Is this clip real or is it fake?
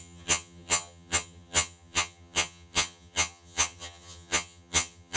fake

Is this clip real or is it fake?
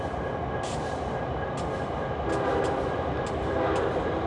real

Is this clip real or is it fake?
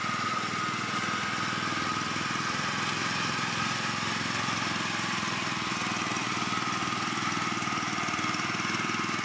real